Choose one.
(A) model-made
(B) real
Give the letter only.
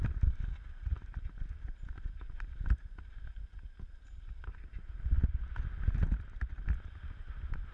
B